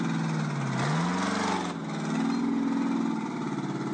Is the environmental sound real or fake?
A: real